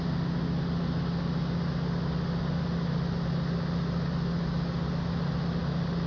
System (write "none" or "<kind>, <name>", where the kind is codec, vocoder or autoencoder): none